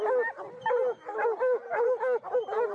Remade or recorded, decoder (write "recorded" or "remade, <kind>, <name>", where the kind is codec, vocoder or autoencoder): recorded